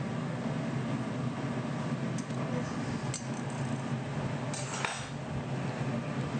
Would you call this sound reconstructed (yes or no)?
no